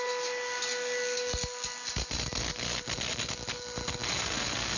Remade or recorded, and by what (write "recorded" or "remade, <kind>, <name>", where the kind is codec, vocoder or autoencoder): recorded